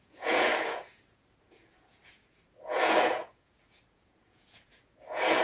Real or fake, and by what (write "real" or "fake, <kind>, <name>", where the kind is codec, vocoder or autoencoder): fake, vocoder, Vocos